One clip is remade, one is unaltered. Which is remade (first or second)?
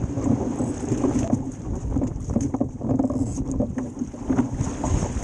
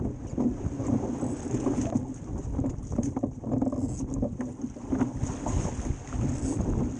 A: first